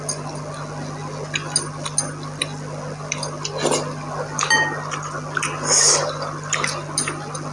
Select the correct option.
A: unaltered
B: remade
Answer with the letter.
A